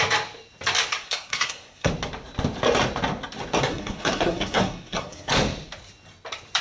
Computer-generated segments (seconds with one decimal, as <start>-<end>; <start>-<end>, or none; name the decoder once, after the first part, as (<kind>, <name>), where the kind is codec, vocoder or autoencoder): 1.0-1.9 (codec, SNAC); 3.6-5.3